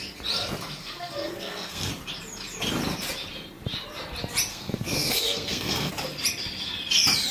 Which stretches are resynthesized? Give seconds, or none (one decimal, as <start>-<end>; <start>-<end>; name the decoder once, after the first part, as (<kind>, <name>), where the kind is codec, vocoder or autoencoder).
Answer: 0.8-1.9 (codec, SNAC); 4.5-5.9